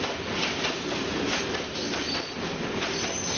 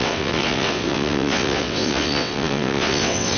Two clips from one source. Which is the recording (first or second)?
first